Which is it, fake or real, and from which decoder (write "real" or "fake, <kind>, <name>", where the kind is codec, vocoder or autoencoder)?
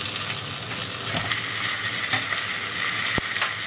real